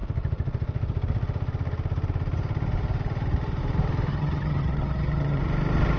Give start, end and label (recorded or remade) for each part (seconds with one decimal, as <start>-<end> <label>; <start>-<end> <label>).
0.0-4.1 recorded; 4.1-5.4 remade; 5.4-6.0 recorded